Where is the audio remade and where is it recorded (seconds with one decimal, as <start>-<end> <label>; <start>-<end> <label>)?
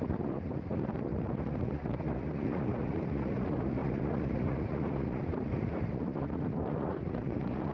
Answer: 0.0-7.7 remade